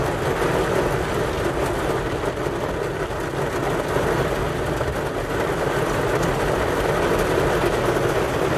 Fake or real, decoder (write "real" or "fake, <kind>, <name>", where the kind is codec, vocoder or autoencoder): real